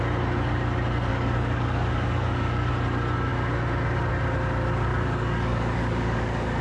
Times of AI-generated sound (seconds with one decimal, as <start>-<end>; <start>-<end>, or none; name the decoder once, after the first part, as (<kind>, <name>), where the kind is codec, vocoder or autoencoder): 1.1-2.7 (codec, DAC); 4.9-6.6